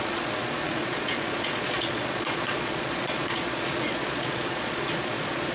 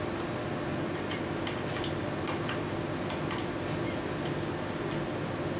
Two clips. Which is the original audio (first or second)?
second